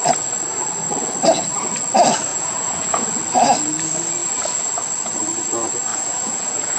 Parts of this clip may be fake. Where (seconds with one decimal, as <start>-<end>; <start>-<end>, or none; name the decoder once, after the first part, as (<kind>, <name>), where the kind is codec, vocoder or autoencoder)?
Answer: 2.3-3.0 (vocoder, Vocos); 5.9-6.8

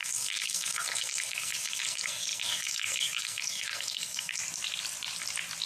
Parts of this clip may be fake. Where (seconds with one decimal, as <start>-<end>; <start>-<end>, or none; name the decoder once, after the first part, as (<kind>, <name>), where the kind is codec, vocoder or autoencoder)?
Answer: 0.0-4.4 (codec, SNAC)

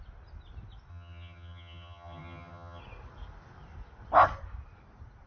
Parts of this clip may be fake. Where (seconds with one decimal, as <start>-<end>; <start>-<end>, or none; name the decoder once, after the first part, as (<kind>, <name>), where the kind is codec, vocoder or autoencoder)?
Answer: 0.9-2.8 (vocoder, HiFi-GAN)

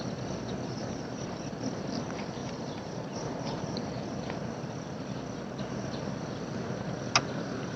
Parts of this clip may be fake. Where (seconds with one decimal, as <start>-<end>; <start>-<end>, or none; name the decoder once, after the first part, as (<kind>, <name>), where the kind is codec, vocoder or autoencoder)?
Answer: 0.8-1.4 (vocoder, BigVGAN v2); 2.4-3.6

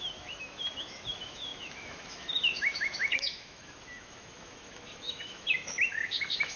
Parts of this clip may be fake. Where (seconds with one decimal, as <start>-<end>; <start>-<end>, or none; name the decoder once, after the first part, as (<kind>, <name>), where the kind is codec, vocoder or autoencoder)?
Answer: 0.0-6.6 (autoencoder, DAC-VAE)

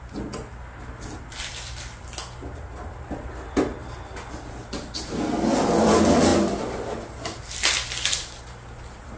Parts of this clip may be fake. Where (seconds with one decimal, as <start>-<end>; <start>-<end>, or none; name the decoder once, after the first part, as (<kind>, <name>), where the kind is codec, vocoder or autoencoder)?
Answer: none

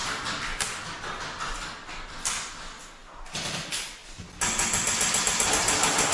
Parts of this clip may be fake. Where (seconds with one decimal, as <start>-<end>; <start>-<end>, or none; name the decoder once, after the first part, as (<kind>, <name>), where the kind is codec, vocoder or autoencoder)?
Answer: none